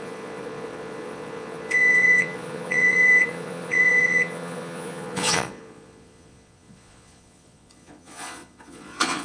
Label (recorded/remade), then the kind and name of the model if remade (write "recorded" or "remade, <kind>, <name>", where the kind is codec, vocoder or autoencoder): remade, vocoder, Vocos